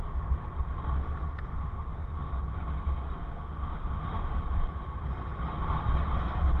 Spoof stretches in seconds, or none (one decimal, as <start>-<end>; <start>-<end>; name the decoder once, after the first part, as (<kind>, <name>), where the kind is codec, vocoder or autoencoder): 1.5-2.4 (autoencoder, DAC-VAE); 3.2-4.4